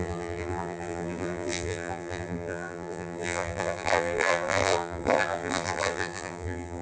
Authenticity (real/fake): fake